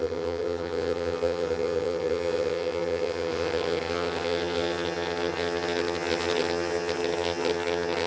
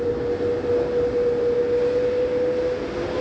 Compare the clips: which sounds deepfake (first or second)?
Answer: first